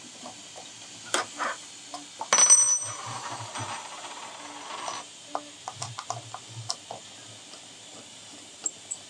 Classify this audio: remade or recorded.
recorded